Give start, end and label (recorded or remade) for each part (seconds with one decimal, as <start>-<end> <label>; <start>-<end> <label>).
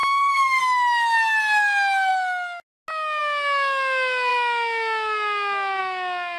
0.0-0.6 remade; 0.6-6.4 recorded